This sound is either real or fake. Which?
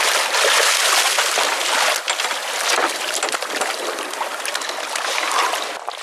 real